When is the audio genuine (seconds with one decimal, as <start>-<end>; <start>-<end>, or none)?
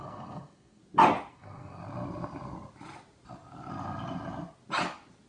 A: 0.8-1.3; 1.8-5.3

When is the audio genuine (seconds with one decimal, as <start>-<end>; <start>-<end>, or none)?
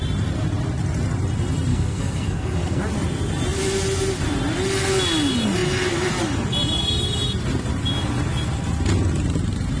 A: 0.0-1.7; 2.8-9.8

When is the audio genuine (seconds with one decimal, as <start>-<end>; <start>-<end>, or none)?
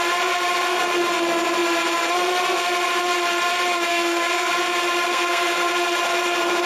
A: 0.0-3.9; 4.5-5.1; 5.7-6.7